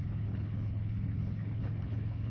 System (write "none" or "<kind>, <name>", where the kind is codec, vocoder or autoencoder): codec, HILCodec